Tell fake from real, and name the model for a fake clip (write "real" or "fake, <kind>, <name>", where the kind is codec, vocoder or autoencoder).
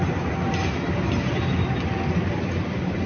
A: real